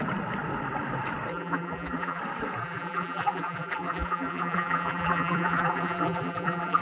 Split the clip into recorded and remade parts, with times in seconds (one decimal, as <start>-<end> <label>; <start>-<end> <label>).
0.0-1.3 recorded; 1.3-2.2 remade; 2.2-2.6 recorded; 2.6-6.8 remade